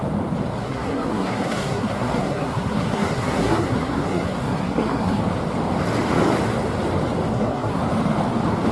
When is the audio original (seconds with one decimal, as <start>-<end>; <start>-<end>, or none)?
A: 0.0-0.6; 5.2-7.3; 7.8-8.7